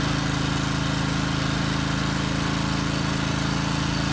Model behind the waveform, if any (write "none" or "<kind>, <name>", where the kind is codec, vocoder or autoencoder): none